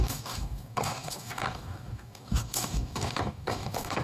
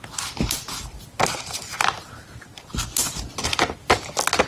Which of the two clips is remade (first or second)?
first